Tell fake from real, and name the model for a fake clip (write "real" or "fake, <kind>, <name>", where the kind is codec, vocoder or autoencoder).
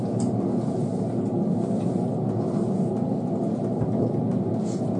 real